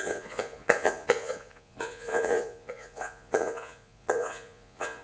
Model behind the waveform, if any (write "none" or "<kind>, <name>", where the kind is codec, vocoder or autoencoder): vocoder, Vocos